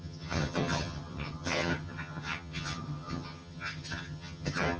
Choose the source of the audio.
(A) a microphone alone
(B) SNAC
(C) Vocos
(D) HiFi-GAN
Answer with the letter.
D